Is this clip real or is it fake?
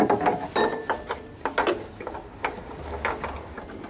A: real